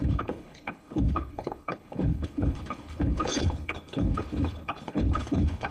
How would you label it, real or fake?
fake